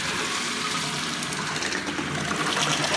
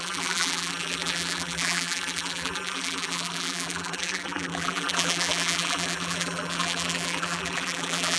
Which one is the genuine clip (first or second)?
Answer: first